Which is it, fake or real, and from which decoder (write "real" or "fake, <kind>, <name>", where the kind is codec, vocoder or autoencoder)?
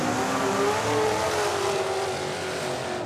real